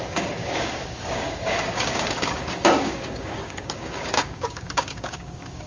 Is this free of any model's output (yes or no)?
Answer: no